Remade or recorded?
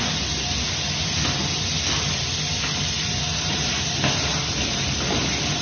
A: recorded